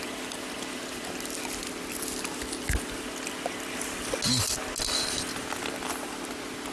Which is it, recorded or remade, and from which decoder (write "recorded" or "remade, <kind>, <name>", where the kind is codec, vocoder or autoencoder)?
recorded